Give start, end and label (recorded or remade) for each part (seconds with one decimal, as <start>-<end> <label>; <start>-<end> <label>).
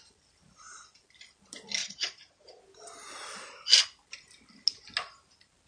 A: 0.0-1.8 recorded; 1.8-2.6 remade; 2.6-5.7 recorded